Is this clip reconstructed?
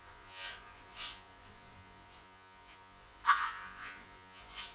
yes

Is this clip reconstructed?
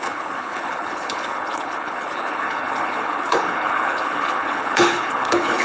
yes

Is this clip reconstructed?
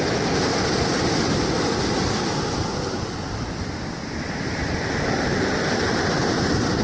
no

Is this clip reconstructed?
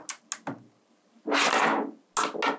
no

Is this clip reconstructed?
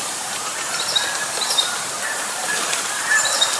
yes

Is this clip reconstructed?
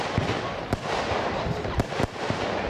no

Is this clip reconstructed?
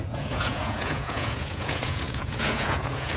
yes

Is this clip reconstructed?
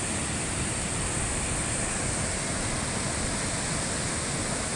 no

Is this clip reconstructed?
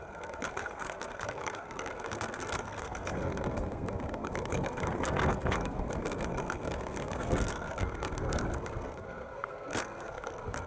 yes